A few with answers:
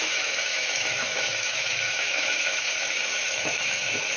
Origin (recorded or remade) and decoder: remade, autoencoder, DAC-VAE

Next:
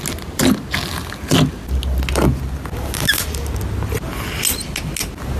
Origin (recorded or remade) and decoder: recorded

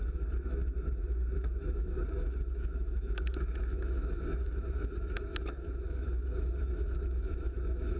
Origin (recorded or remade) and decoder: remade, autoencoder, DAC-VAE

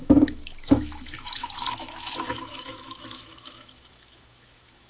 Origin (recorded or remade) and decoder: remade, autoencoder, DAC-VAE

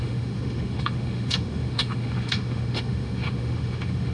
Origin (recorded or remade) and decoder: remade, autoencoder, DAC-VAE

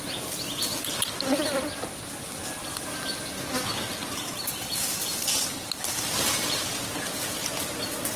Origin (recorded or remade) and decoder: recorded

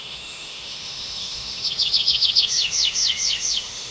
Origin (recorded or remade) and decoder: remade, autoencoder, DAC-VAE